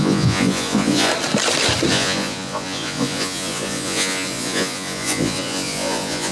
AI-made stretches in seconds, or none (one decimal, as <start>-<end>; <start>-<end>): 0.0-1.1; 1.9-6.3